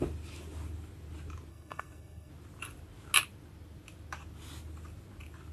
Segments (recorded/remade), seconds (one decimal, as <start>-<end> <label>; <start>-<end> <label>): 0.0-1.5 recorded; 1.5-2.3 remade; 2.3-5.5 recorded